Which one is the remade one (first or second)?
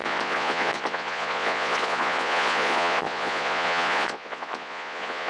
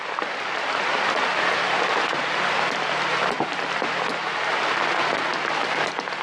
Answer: first